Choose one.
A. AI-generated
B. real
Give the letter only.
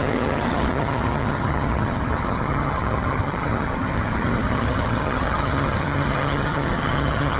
A